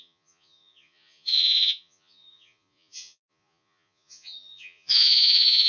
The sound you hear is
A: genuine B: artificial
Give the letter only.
B